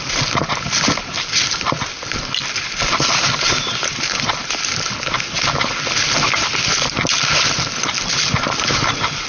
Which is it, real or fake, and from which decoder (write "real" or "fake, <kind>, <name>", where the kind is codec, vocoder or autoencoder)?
real